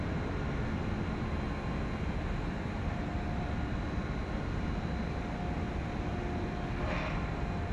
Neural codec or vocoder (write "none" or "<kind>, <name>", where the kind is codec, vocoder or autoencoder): none